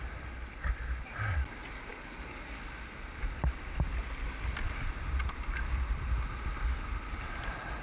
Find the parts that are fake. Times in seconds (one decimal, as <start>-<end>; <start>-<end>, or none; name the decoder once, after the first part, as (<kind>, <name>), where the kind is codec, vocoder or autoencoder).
1.9-2.6 (codec, DAC)